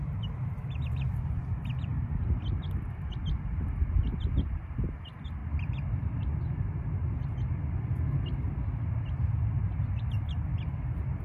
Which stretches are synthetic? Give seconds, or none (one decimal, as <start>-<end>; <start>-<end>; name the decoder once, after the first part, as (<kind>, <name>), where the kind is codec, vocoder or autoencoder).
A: 5.4-6.5 (vocoder, BigVGAN v2)